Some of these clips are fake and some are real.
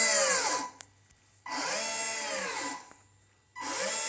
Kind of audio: real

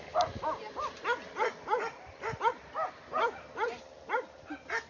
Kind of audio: real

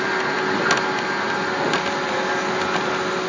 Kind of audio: real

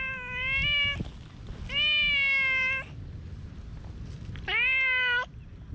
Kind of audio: real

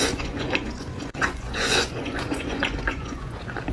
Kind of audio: fake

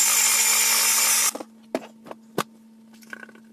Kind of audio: real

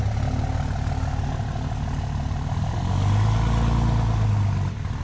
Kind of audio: real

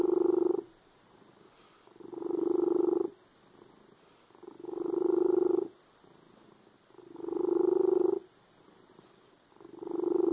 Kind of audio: real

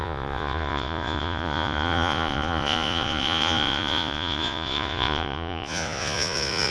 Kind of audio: fake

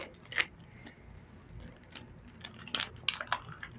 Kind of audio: real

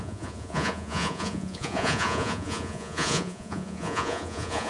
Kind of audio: fake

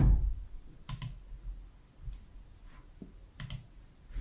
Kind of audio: real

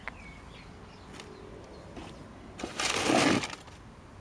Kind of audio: real